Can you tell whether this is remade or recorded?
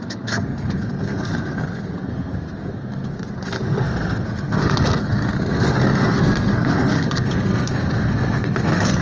remade